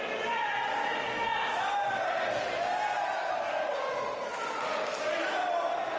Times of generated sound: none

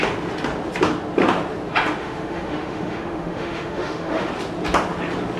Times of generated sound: 2.0-4.3 (autoencoder, DAC-VAE)

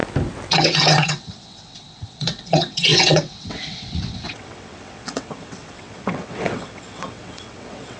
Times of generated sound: 0.5-8.0 (vocoder, WaveNeXt)

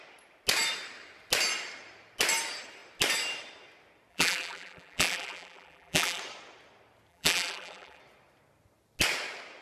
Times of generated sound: 4.1-6.2 (vocoder, BigVGAN v2); 7.1-8.0

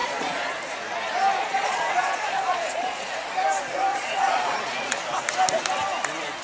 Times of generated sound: 0.0-0.6 (vocoder, Vocos); 1.4-3.1; 3.9-5.0

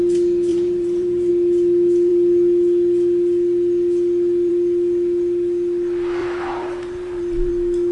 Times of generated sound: 0.5-1.3 (vocoder, BigVGAN v2); 6.2-7.5

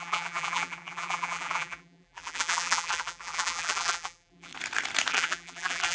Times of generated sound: 0.0-4.5 (vocoder, BigVGAN v2); 5.1-5.9